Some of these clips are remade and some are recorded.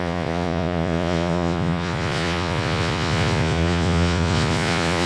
remade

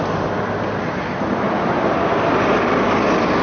recorded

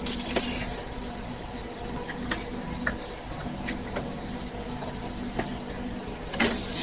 recorded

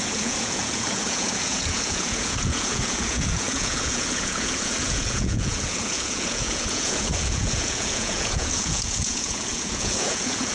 remade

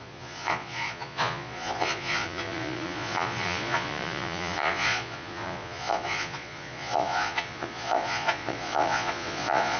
remade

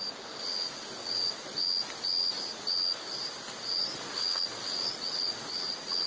recorded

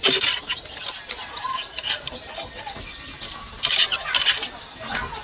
recorded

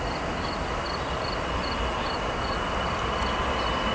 recorded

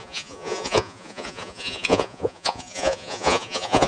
remade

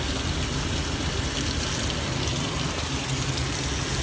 recorded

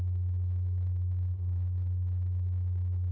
recorded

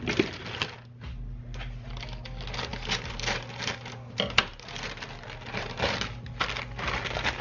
recorded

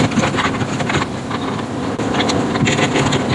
recorded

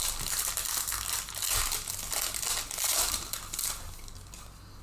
recorded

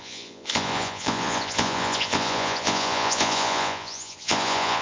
remade